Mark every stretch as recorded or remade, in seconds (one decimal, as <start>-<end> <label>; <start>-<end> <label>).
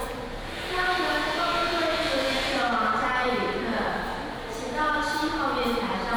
0.0-6.2 remade